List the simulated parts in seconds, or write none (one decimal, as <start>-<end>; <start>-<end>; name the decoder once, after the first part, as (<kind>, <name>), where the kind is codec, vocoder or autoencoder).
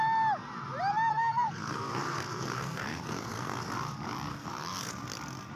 1.1-3.7 (codec, SNAC); 4.3-4.9